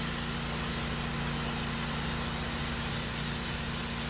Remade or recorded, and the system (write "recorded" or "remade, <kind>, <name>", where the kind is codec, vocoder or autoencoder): recorded